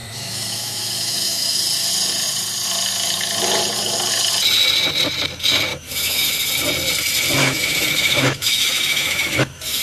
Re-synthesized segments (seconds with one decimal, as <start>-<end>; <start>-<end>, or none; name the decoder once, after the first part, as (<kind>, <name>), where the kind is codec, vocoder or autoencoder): 0.0-1.6 (autoencoder, DAC-VAE); 5.7-6.5; 7.4-9.8